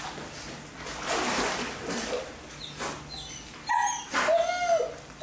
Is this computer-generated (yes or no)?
no